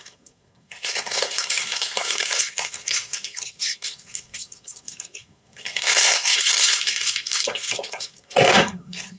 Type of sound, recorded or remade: remade